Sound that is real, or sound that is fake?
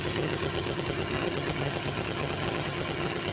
fake